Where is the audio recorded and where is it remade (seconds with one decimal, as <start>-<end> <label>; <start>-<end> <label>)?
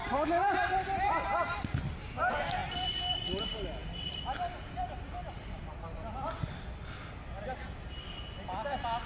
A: 0.0-9.1 recorded